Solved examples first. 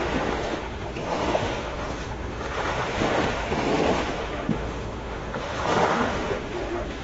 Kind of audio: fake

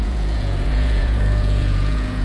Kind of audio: fake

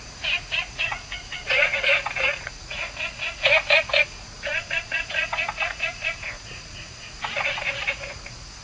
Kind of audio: fake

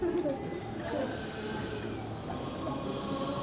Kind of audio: real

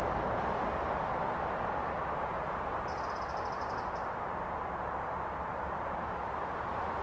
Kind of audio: real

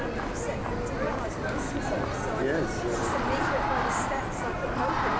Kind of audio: real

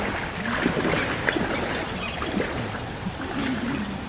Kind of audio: real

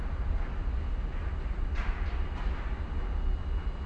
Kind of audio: real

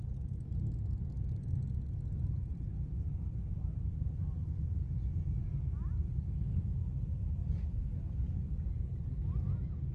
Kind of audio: real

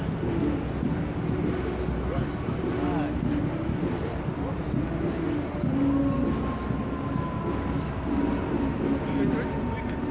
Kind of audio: real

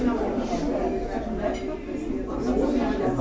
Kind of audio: real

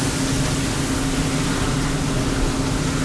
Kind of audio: real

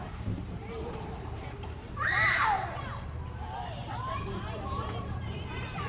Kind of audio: fake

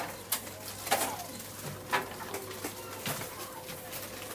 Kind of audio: real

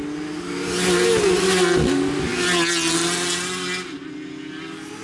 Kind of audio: real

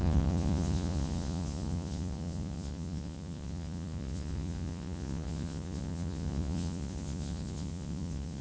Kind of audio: fake